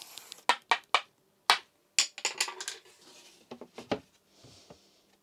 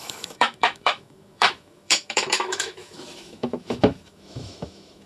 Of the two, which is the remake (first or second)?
second